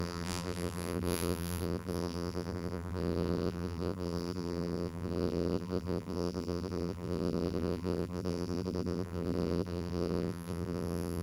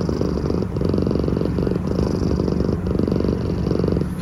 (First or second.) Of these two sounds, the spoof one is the first